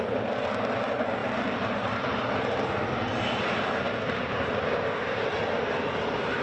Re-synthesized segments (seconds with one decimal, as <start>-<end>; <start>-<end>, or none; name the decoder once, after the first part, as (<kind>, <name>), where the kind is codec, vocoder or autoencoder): none